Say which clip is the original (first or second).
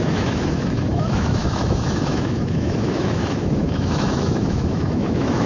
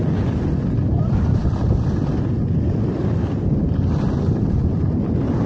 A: second